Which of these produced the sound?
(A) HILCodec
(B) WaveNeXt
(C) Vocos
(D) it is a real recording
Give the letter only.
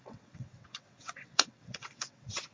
B